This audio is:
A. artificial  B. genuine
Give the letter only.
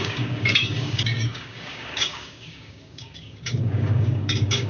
A